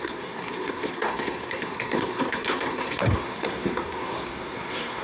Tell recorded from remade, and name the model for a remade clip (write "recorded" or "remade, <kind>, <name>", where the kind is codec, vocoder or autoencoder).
remade, codec, SNAC